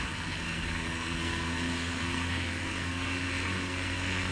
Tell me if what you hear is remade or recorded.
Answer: remade